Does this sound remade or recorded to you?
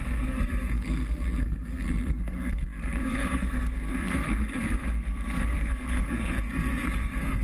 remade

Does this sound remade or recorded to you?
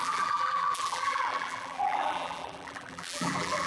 remade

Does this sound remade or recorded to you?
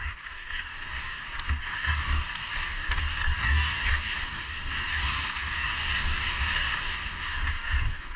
remade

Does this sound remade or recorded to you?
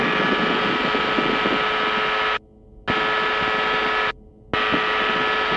recorded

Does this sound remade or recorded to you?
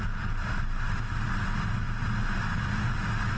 recorded